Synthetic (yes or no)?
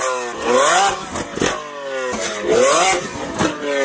no